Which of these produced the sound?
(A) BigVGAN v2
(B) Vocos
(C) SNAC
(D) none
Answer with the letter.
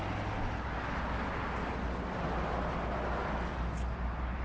D